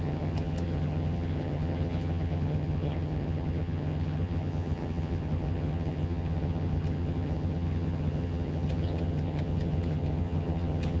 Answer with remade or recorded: remade